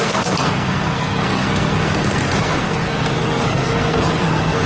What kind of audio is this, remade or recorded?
remade